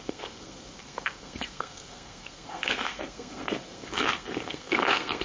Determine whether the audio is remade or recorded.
remade